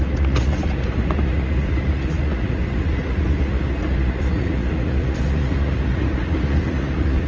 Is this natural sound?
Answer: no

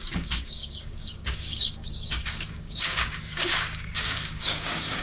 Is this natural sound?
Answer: no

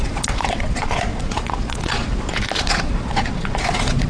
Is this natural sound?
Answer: no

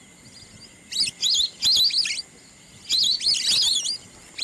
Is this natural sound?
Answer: yes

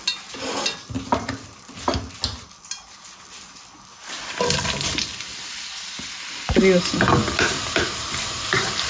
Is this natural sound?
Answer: yes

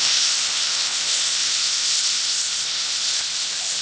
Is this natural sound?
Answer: no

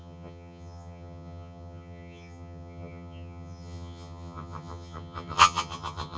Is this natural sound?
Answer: no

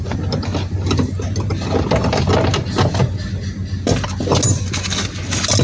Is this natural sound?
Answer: yes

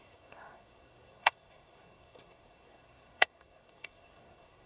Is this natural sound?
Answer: no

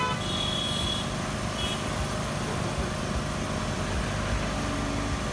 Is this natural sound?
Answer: yes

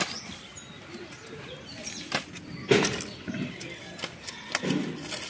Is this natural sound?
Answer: yes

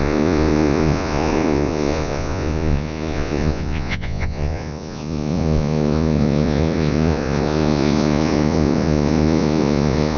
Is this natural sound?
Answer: no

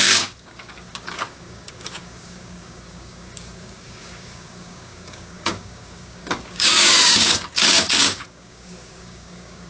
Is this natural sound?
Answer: no